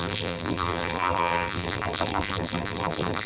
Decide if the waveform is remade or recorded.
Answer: remade